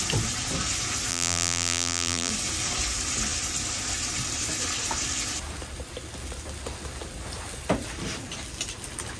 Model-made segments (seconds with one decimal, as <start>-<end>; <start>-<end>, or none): 1.1-2.3